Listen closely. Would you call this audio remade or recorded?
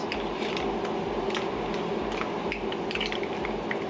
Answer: recorded